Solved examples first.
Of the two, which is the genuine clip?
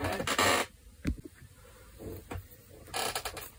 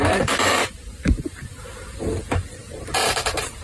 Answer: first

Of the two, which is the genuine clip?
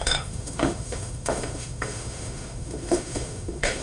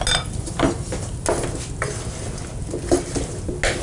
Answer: second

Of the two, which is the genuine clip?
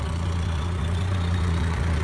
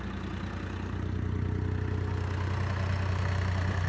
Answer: second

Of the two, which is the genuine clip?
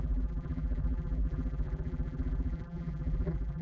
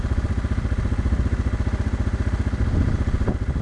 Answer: second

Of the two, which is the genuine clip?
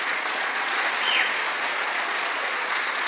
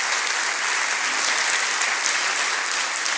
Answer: second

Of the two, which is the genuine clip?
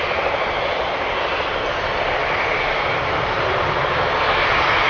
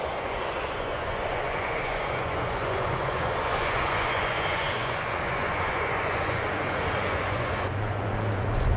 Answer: first